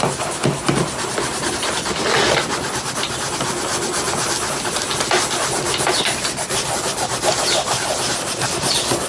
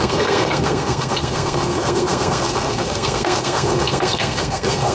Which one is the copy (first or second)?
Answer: second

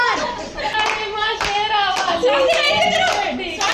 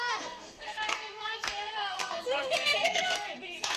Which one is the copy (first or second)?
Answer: second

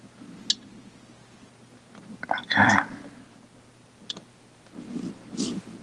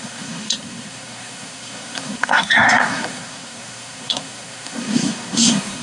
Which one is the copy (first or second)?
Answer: second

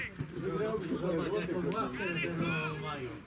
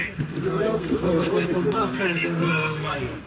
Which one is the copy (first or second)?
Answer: second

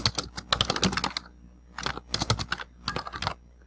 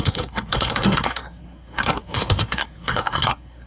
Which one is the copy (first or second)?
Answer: second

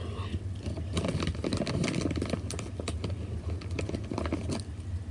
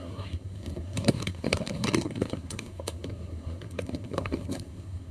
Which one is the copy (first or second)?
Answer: second